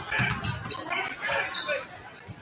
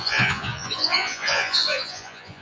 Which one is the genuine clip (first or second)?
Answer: first